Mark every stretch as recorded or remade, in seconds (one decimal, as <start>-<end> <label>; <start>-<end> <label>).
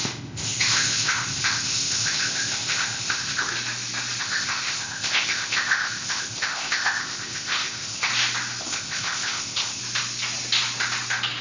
0.0-3.5 remade; 3.5-4.2 recorded; 4.2-8.1 remade; 8.1-8.6 recorded; 8.6-9.8 remade; 9.8-11.4 recorded